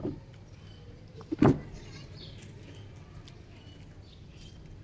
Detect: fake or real real